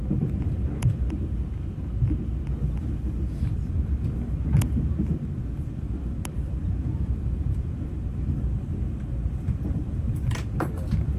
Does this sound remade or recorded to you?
remade